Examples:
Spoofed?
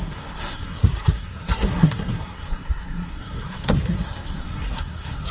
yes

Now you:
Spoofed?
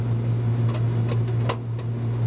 no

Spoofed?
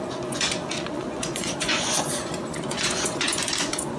yes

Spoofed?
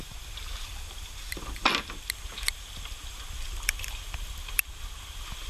no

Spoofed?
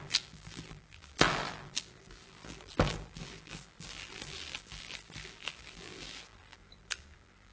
yes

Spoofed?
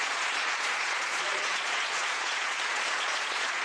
yes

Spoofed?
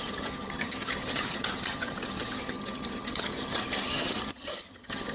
yes